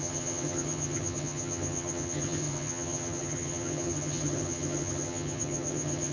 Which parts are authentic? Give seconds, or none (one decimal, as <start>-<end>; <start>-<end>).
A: none